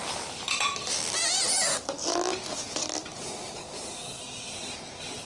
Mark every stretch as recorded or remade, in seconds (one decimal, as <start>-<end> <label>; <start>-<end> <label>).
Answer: 0.0-3.6 recorded; 3.6-4.2 remade; 4.2-5.2 recorded